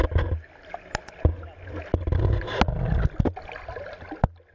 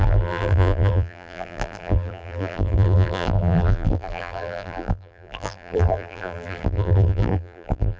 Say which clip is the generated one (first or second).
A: second